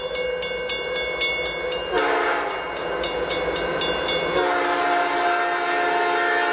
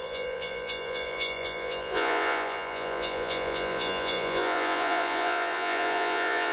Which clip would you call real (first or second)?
first